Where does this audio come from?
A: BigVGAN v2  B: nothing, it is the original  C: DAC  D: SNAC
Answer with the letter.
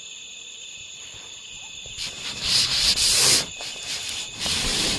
B